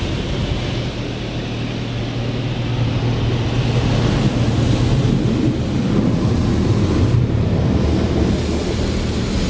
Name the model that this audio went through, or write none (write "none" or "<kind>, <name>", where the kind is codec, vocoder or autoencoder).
none